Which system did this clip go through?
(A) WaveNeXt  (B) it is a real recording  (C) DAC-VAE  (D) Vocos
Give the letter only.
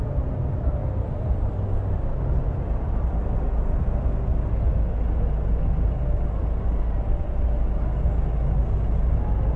B